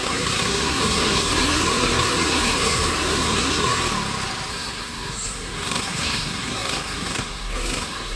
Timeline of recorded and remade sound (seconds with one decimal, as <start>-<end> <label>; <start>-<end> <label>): 0.0-3.8 remade; 3.8-4.5 recorded; 4.5-8.2 remade